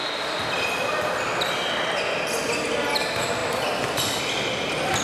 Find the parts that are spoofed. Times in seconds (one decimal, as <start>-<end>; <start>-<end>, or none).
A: none